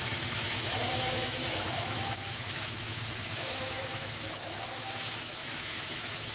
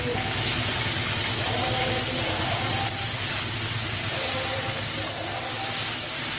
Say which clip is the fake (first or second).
first